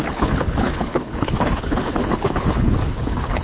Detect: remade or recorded remade